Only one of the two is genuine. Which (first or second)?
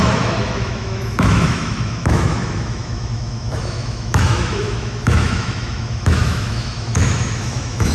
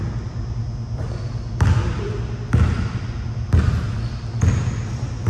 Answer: second